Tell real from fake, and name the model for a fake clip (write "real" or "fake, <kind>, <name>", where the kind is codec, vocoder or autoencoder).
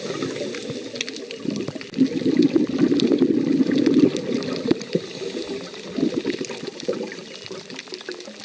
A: real